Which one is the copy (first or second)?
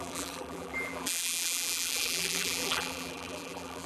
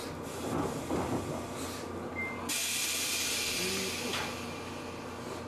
first